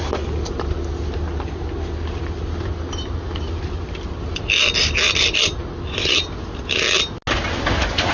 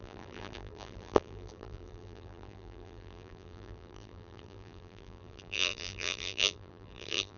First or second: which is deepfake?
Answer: second